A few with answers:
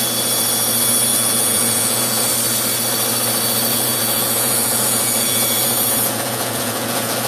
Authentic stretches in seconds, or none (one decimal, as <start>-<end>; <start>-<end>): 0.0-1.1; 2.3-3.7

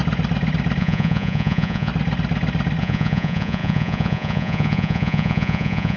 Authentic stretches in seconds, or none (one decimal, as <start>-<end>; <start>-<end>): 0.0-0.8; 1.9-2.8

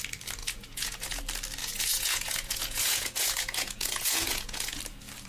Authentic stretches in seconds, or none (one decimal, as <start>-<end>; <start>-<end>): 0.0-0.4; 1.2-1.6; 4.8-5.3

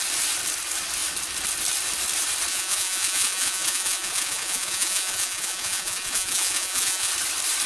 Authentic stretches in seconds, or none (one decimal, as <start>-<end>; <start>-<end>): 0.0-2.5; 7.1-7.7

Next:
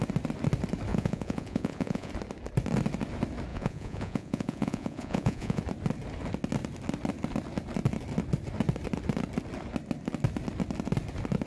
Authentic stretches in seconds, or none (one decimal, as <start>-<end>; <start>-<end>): 0.0-0.9; 2.1-3.5; 5.6-11.5

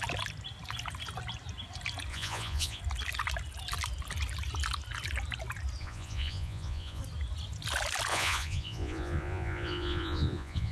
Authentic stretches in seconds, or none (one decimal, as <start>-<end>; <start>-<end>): 0.0-2.1; 2.8-5.8; 7.0-8.1

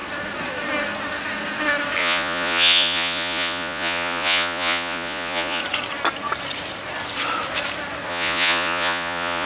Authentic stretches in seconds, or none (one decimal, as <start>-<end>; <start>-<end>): 0.0-2.0; 5.6-8.1